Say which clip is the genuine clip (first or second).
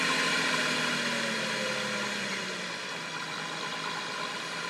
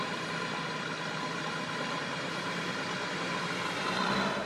first